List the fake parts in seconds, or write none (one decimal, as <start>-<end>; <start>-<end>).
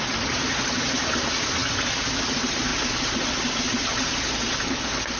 none